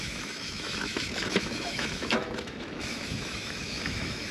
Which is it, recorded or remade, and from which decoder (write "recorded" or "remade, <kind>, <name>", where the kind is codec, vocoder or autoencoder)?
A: remade, autoencoder, DAC-VAE